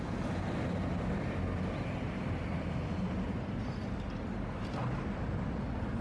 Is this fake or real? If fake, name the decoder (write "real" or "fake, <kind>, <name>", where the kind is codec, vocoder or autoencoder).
real